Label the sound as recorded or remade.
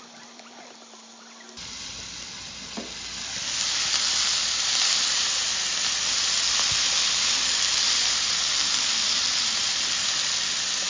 recorded